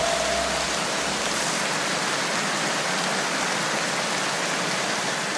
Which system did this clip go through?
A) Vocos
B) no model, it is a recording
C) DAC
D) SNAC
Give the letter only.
B